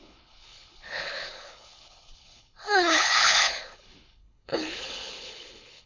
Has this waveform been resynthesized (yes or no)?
yes